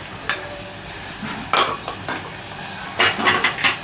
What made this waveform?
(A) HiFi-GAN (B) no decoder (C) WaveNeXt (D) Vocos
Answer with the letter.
B